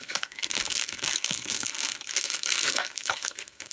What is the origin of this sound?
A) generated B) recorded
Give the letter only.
A